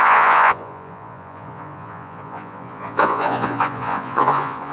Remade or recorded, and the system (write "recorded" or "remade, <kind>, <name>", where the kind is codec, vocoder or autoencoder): remade, vocoder, Vocos